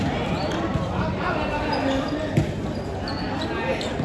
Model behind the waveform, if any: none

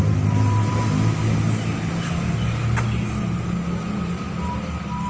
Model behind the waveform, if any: none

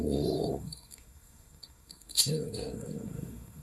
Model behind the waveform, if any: codec, SNAC